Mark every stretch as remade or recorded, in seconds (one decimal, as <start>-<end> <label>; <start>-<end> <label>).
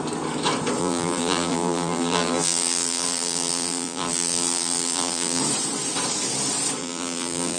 0.0-0.8 recorded; 0.8-5.4 remade; 5.4-6.8 recorded; 6.8-7.6 remade